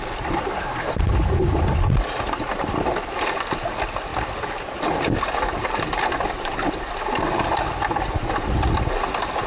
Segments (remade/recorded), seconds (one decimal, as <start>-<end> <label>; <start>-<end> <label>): 0.0-9.5 recorded